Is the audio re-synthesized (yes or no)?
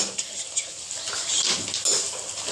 no